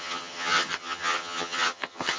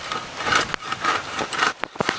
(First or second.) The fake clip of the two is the first